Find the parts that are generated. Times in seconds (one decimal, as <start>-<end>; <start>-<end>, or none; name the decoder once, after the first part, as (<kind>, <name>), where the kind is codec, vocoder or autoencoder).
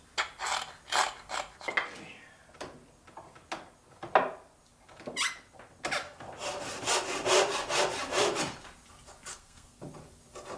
9.3-9.8 (codec, SNAC)